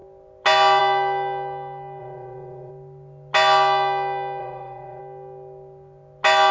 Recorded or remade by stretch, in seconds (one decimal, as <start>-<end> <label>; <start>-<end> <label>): 0.0-2.0 recorded; 2.0-2.7 remade; 2.7-4.4 recorded; 4.4-5.0 remade; 5.0-6.5 recorded